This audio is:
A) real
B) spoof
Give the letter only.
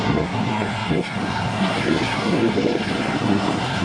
B